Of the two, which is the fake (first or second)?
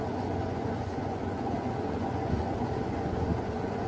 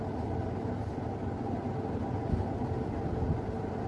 first